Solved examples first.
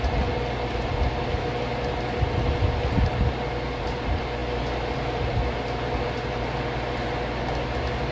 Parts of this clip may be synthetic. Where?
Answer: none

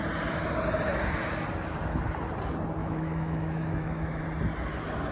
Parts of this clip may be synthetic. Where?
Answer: 2.8-4.2 (autoencoder, DAC-VAE)